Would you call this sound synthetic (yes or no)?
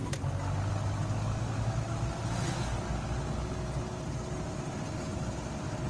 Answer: no